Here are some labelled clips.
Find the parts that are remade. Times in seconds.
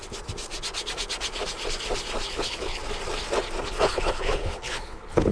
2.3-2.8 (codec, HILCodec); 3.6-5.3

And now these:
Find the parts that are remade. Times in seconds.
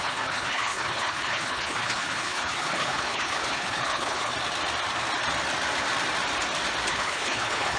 0.0-4.3 (codec, HILCodec); 6.9-7.8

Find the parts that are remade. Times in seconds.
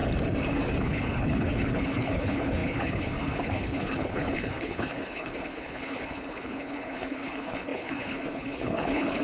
0.8-9.2 (codec, HILCodec)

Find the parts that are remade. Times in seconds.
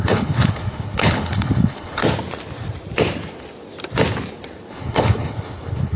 0.0-2.0 (codec, HILCodec); 4.7-6.0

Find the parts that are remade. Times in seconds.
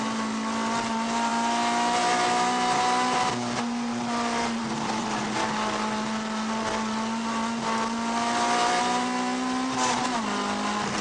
none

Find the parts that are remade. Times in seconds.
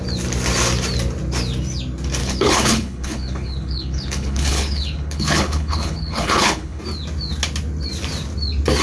2.2-6.8 (codec, HILCodec)